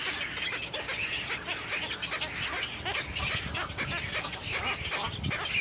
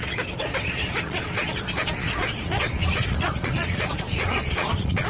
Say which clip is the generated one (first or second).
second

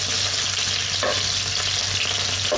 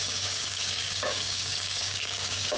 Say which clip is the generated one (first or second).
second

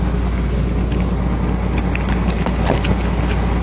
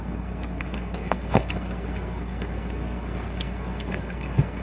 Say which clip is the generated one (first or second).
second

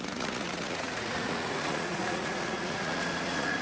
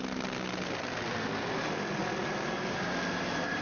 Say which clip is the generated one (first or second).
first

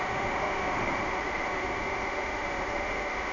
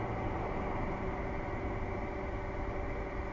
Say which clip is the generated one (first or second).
first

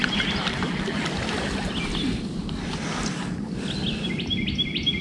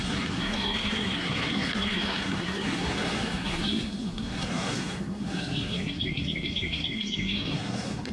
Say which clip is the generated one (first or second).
second